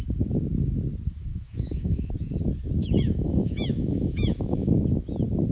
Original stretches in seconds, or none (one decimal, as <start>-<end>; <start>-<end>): 0.0-1.3; 2.1-2.8; 4.7-5.5